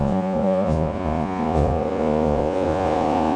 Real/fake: fake